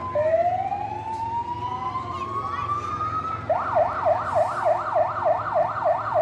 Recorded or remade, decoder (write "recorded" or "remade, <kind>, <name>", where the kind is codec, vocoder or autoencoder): recorded